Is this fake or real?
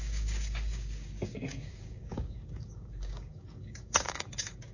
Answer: fake